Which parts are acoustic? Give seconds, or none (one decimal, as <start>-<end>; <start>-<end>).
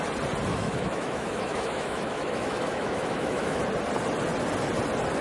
0.0-0.5; 3.6-5.2